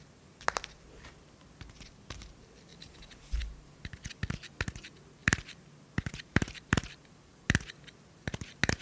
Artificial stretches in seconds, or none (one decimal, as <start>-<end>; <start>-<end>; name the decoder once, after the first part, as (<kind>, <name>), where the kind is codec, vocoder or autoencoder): 2.7-3.4 (vocoder, BigVGAN v2); 5.2-6.9